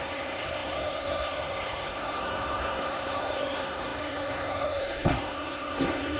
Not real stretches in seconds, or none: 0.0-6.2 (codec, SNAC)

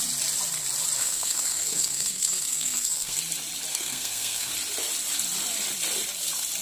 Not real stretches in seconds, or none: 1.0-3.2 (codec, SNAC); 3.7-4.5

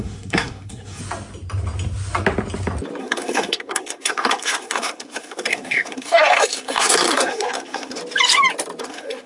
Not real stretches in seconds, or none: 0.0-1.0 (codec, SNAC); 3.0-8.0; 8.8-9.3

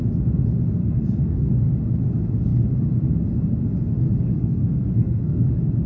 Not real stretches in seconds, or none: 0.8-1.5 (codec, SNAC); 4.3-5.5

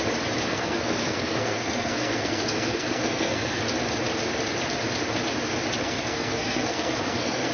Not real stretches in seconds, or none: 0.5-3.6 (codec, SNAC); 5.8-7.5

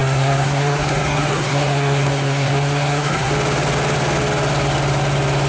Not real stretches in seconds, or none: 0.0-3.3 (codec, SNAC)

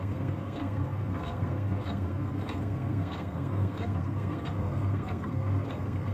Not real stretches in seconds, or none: 0.0-6.1 (codec, SNAC)